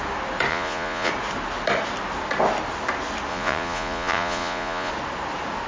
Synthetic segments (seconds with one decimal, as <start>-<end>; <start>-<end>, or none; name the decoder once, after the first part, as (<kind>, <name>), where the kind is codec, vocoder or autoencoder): 0.5-1.1 (vocoder, Vocos); 3.3-4.9